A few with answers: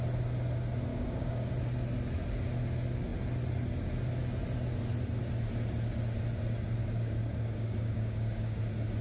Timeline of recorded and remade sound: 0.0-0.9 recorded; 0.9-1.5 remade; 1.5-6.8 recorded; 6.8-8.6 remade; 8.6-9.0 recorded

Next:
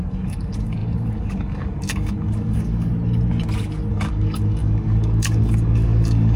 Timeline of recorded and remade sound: 0.0-2.9 remade; 2.9-3.9 recorded; 3.9-6.4 remade

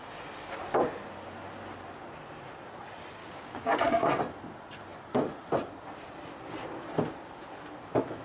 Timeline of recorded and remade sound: 0.0-3.2 recorded; 3.2-4.2 remade; 4.2-8.2 recorded

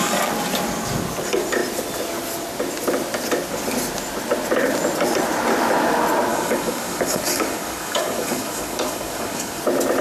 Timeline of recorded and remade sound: 0.0-6.3 recorded; 6.3-9.6 remade; 9.6-10.0 recorded